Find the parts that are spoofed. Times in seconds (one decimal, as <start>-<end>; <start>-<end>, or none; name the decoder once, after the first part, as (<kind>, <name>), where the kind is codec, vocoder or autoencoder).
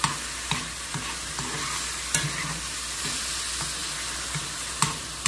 none